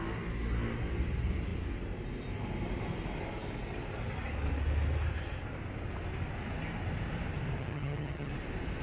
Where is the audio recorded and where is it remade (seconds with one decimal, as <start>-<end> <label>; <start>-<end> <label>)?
0.0-7.6 recorded; 7.6-8.3 remade; 8.3-8.8 recorded